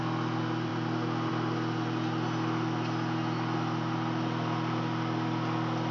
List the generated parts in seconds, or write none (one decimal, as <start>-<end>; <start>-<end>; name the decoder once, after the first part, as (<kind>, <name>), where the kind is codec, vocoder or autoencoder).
none

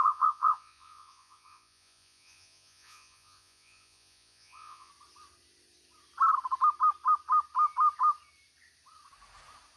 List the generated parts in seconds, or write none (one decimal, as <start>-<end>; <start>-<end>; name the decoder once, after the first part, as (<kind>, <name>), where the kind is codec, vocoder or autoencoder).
0.0-4.9 (vocoder, Vocos)

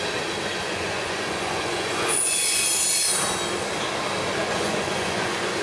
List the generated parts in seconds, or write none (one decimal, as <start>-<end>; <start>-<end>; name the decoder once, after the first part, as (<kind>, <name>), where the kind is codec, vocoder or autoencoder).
0.5-2.6 (vocoder, Vocos); 4.4-5.6

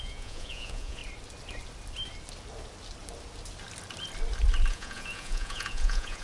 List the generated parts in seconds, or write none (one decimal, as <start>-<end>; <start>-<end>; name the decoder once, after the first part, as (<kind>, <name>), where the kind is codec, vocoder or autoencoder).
0.0-1.0 (vocoder, Vocos); 4.7-6.2

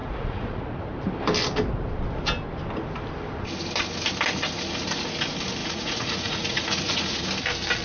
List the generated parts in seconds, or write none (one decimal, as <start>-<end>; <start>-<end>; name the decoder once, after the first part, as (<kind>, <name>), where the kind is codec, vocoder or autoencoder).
0.0-0.7 (vocoder, Vocos); 5.6-7.3

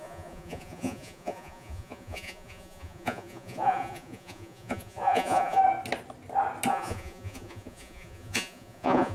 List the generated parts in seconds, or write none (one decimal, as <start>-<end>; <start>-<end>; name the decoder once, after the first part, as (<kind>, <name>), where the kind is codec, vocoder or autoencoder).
0.0-5.6 (vocoder, Vocos); 6.7-9.1